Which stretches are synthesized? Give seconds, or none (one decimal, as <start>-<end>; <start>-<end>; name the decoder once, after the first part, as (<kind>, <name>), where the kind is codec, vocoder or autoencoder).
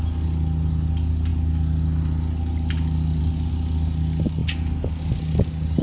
none